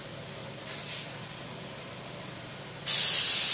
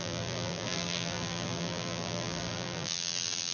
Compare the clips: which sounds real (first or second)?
first